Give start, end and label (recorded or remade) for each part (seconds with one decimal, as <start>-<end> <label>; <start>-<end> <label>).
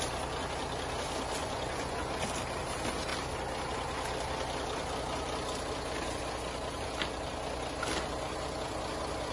0.0-1.4 recorded; 1.4-2.1 remade; 2.1-9.3 recorded